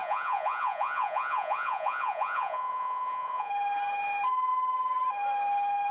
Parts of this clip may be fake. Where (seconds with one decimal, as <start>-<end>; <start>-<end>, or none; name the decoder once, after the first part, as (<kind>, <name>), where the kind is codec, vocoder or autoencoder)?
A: 0.0-3.5 (vocoder, Vocos)